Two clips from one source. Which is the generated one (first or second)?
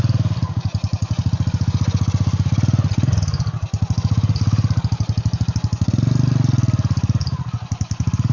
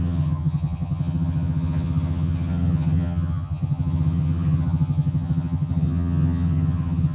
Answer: second